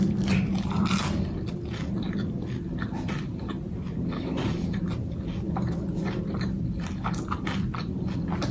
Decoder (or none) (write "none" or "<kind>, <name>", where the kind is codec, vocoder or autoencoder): none